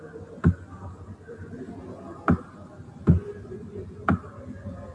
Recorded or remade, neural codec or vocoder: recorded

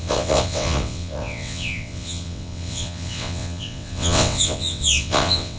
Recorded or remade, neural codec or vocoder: remade, vocoder, WaveNeXt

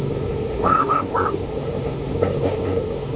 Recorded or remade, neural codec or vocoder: remade, codec, SNAC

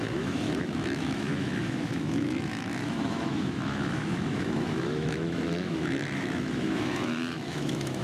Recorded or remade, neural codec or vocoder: remade, autoencoder, DAC-VAE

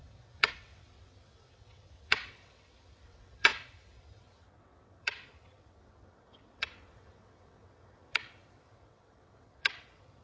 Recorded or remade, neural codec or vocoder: remade, vocoder, WaveNeXt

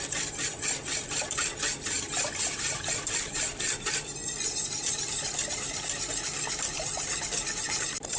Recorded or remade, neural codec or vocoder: remade, vocoder, BigVGAN v2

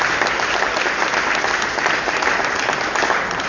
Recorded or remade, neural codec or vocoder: recorded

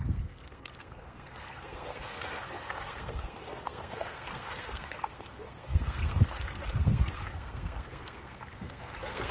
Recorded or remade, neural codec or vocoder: remade, codec, SNAC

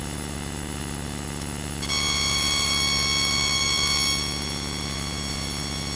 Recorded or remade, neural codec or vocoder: remade, autoencoder, DAC-VAE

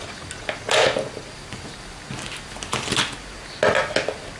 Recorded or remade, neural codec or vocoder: recorded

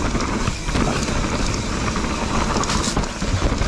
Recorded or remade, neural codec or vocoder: recorded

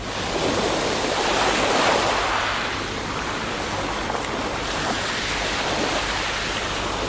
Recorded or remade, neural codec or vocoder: recorded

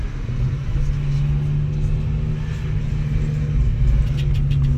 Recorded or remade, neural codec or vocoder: recorded